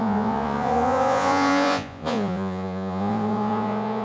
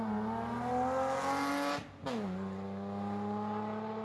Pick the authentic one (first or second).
second